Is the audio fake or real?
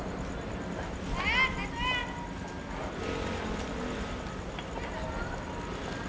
real